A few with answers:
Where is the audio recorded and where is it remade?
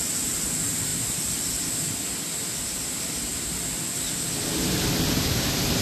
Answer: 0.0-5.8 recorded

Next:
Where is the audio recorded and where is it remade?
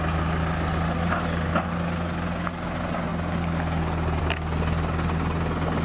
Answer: 0.0-5.8 recorded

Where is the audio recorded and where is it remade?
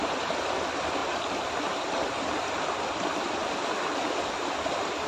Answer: 0.0-3.4 remade; 3.4-4.0 recorded; 4.0-5.1 remade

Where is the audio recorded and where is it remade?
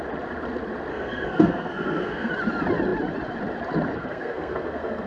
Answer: 0.0-0.9 recorded; 0.9-2.3 remade; 2.3-3.9 recorded; 3.9-5.1 remade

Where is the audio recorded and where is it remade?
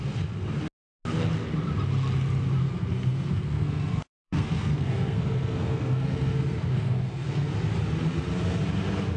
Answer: 0.0-2.6 recorded; 2.6-7.5 remade; 7.5-9.2 recorded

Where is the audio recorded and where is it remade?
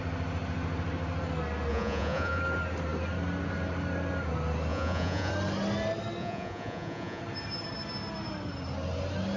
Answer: 0.0-1.7 recorded; 1.7-2.4 remade; 2.4-4.7 recorded; 4.7-5.3 remade; 5.3-6.2 recorded; 6.2-7.2 remade; 7.2-9.4 recorded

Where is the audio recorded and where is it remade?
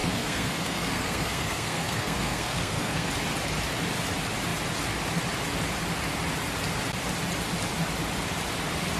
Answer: 0.0-3.1 remade; 3.1-9.0 recorded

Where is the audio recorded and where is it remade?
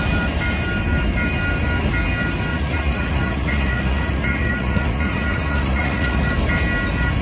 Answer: 0.0-2.5 recorded; 2.5-6.3 remade; 6.3-7.2 recorded